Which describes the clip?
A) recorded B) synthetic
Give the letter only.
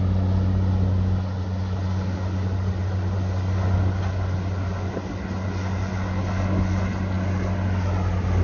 A